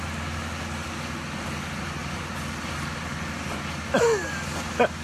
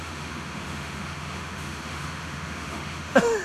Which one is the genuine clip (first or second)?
first